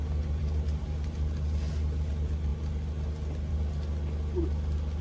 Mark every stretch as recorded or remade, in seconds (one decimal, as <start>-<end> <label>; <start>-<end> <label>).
0.0-5.0 recorded